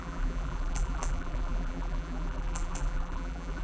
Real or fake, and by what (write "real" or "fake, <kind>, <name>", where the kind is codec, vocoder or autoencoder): fake, vocoder, BigVGAN v2